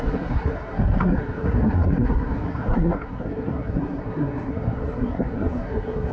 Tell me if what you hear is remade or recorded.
remade